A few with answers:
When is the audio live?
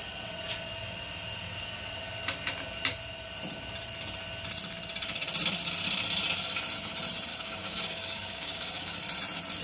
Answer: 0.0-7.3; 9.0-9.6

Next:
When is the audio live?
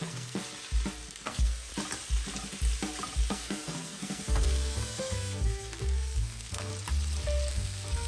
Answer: 0.4-1.1; 1.7-3.3; 6.7-7.5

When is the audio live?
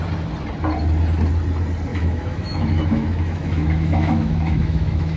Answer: 0.0-1.9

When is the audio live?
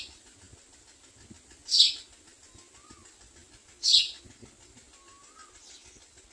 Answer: 0.0-6.3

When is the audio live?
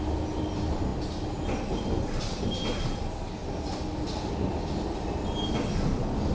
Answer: 0.0-6.3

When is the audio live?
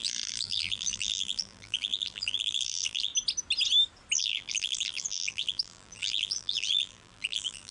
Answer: 3.1-4.2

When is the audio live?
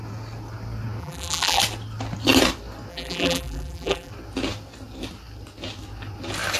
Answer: 0.0-1.0; 1.6-2.9; 4.1-6.6